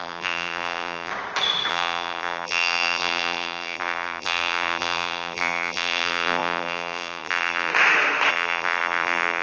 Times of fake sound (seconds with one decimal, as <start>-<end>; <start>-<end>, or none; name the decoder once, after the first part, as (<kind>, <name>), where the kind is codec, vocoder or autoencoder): 0.0-1.1 (vocoder, BigVGAN v2); 1.7-7.7; 8.3-9.4